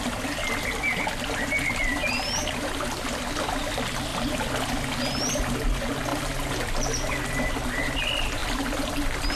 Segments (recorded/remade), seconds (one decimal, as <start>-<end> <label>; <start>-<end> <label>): 0.0-9.4 recorded

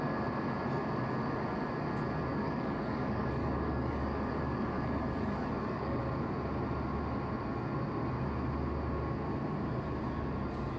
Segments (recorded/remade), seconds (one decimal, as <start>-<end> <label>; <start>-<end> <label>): 0.0-2.3 recorded; 2.3-6.0 remade; 6.0-10.8 recorded

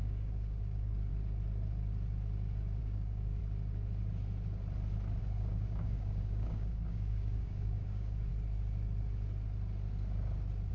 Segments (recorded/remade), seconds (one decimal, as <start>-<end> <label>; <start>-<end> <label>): 0.0-1.1 remade; 1.1-2.8 recorded; 2.8-3.4 remade; 3.4-5.2 recorded; 5.2-8.3 remade; 8.3-10.7 recorded

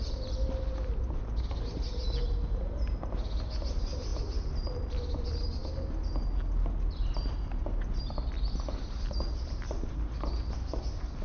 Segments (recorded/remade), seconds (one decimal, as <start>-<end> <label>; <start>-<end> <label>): 0.0-11.2 recorded

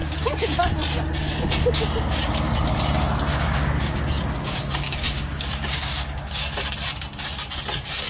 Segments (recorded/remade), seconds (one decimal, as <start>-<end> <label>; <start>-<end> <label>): 0.0-0.6 remade; 0.6-3.3 recorded; 3.3-6.4 remade; 6.4-8.1 recorded

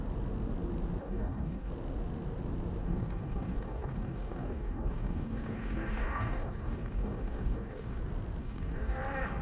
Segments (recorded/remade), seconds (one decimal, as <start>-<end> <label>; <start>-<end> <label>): 0.0-1.0 recorded; 1.0-1.7 remade; 1.7-2.8 recorded; 2.8-8.0 remade; 8.0-8.4 recorded; 8.4-9.0 remade; 9.0-9.4 recorded